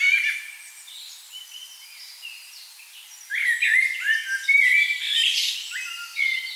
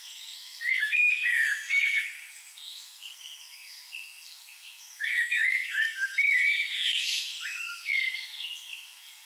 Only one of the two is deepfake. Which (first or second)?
second